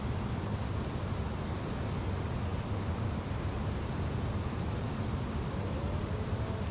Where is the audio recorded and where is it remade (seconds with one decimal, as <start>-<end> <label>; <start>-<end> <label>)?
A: 0.0-6.7 recorded